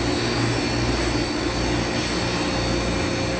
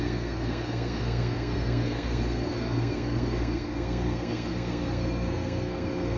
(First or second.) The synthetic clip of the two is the second